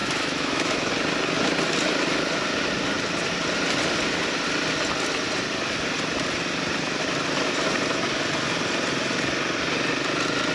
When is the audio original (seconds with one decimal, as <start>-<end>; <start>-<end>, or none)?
0.9-10.5